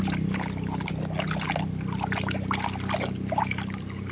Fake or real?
real